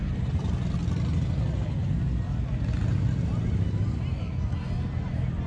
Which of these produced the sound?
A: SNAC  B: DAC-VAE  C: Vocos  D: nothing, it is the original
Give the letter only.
D